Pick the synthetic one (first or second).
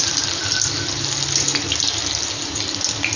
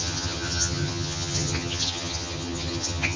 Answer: second